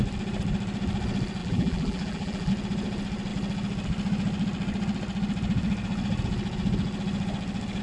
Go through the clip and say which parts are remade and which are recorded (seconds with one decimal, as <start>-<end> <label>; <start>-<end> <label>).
0.0-1.4 recorded; 1.4-2.5 remade; 2.5-7.8 recorded